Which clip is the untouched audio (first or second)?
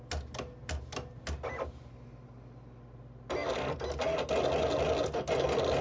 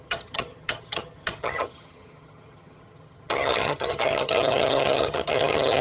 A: first